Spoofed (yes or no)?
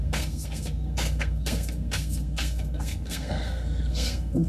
yes